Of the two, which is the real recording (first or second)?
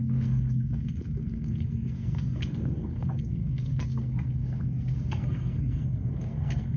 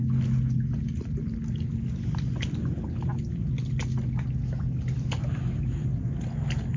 second